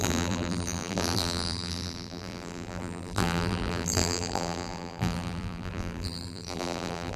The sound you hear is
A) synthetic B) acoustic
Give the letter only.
A